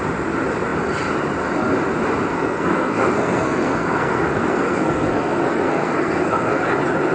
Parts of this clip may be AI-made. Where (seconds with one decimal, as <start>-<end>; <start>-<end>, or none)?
2.3-6.6